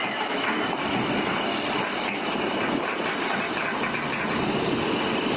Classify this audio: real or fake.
real